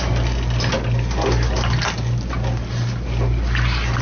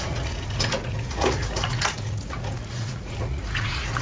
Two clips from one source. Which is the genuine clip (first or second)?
first